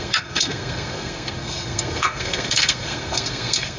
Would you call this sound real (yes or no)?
no